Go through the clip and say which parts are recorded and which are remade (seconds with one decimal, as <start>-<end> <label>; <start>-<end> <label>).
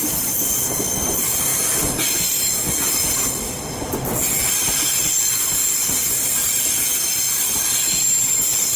0.0-8.8 recorded